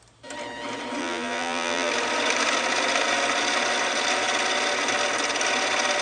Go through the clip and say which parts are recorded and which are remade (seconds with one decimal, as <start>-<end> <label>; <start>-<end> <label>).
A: 0.0-1.0 recorded; 1.0-1.9 remade; 1.9-6.0 recorded